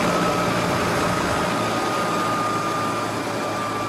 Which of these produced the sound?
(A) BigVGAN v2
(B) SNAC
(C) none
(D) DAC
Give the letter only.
C